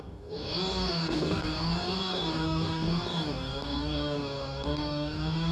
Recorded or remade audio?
remade